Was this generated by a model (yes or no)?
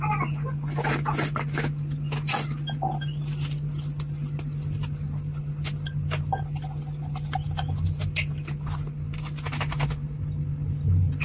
no